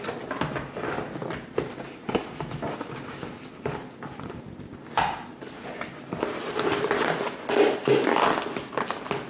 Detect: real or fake real